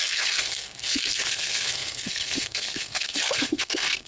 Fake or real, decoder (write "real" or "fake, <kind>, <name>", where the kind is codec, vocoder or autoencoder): fake, codec, SNAC